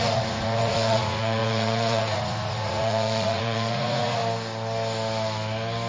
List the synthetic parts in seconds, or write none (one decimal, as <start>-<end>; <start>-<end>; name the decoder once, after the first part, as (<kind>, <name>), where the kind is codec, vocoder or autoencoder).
0.0-4.2 (vocoder, Vocos)